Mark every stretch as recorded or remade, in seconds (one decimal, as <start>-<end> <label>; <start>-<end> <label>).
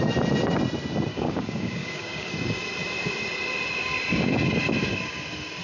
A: 0.0-1.1 recorded; 1.1-2.3 remade; 2.3-5.6 recorded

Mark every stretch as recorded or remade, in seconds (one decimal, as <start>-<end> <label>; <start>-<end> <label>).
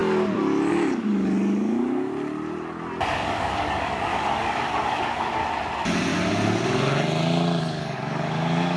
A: 0.0-0.7 recorded; 0.7-2.1 remade; 2.1-3.2 recorded; 3.2-5.4 remade; 5.4-7.6 recorded; 7.6-8.8 remade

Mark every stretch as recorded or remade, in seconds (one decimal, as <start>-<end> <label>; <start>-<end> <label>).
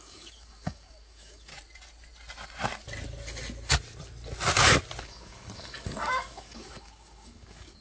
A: 0.0-1.5 remade; 1.5-5.0 recorded; 5.0-7.8 remade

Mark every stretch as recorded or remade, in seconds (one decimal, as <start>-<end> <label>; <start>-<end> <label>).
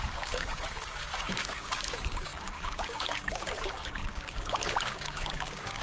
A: 0.0-5.8 remade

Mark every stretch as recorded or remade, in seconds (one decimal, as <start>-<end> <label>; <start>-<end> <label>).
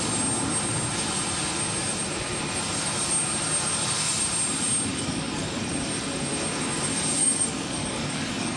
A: 0.0-4.9 recorded; 4.9-5.6 remade; 5.6-7.2 recorded; 7.2-8.6 remade